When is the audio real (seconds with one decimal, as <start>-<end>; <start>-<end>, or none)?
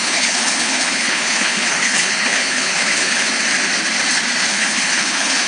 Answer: 3.3-4.5